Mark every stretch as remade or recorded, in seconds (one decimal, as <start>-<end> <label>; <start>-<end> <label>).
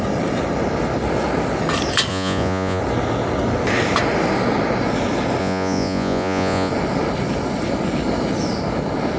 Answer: 0.0-2.1 recorded; 2.1-2.8 remade; 2.8-5.4 recorded; 5.4-6.7 remade; 6.7-9.2 recorded